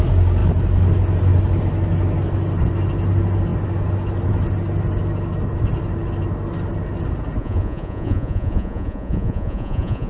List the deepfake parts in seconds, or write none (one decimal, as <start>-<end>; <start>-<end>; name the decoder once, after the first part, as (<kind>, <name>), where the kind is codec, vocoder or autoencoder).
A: 7.4-10.1 (vocoder, Vocos)

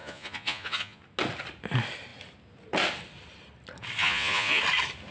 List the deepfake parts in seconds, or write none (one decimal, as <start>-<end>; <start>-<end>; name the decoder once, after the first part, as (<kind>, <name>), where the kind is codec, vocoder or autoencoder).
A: 0.0-1.0 (vocoder, Vocos); 4.0-4.6